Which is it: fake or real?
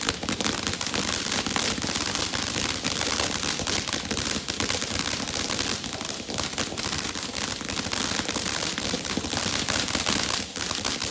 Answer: real